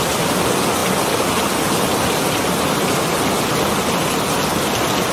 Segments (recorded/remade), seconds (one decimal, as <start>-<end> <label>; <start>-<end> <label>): 0.0-5.1 recorded